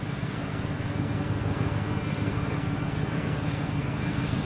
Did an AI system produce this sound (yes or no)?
yes